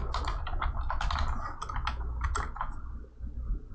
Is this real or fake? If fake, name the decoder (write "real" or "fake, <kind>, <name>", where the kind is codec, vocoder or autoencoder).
real